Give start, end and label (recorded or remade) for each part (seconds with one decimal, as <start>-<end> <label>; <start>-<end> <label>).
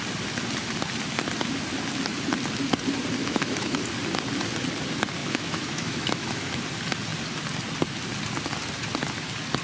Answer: 0.0-3.2 recorded; 3.2-3.8 remade; 3.8-5.2 recorded; 5.2-6.6 remade; 6.6-9.6 recorded